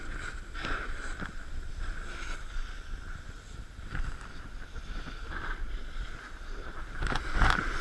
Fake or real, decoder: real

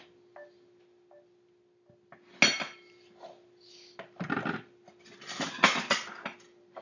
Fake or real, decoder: real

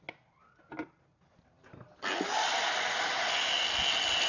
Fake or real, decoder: real